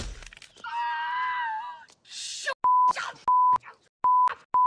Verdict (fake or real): real